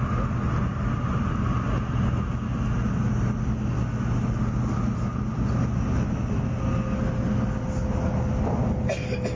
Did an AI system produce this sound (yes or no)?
no